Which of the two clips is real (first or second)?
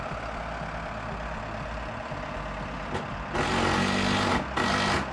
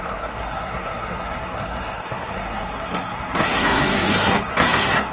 first